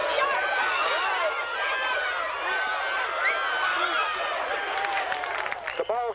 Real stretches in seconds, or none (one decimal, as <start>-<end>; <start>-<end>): 0.0-6.1